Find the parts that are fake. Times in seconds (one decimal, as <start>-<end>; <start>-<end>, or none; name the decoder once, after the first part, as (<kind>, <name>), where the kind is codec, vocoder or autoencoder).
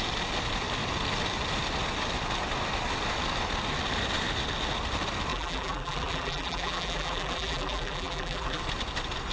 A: 5.3-8.6 (vocoder, BigVGAN v2)